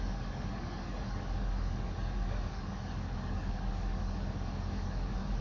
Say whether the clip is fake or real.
fake